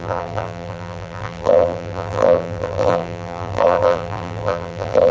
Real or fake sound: fake